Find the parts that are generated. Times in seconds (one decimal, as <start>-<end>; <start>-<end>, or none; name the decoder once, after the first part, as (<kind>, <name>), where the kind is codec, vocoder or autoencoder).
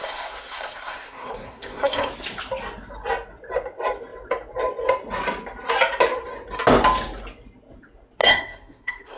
0.0-2.1 (codec, SNAC); 8.2-9.2